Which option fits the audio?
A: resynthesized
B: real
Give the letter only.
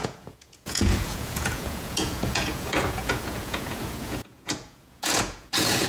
A